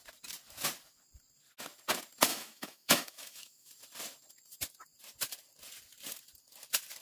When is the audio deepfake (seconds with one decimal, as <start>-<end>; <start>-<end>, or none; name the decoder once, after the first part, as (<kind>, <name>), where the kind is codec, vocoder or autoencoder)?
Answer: 2.3-3.7 (autoencoder, DAC-VAE)